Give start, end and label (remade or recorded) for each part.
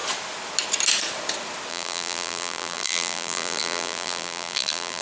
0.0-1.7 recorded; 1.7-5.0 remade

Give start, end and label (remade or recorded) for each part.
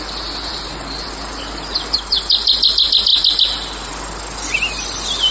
0.0-0.5 recorded; 0.5-1.1 remade; 1.1-5.3 recorded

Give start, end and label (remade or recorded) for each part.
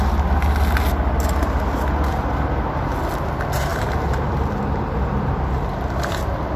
0.0-6.6 recorded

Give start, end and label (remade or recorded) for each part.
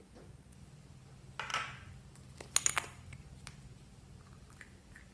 0.0-5.1 recorded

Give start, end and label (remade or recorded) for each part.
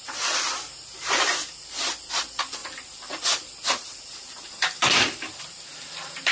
0.0-1.3 recorded; 1.3-6.3 remade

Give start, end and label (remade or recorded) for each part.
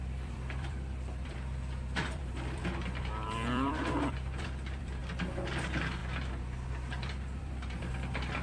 0.0-5.0 remade; 5.0-5.6 recorded; 5.6-8.4 remade